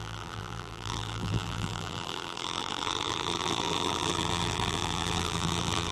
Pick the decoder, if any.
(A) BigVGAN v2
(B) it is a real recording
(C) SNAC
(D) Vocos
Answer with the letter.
A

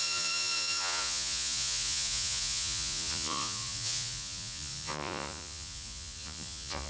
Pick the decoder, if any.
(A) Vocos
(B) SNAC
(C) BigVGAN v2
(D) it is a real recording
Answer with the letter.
A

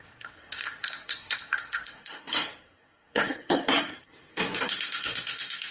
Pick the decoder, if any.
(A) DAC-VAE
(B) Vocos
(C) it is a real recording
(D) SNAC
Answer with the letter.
D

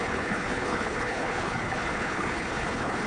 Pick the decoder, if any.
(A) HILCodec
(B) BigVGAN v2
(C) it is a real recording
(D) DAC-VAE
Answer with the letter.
A